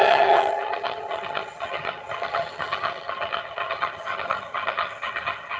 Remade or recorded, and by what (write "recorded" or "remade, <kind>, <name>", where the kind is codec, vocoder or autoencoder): remade, vocoder, HiFi-GAN